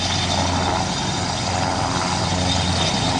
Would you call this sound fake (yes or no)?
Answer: no